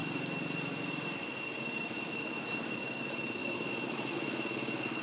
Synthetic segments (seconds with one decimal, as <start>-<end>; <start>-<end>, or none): 1.6-3.4; 3.9-5.0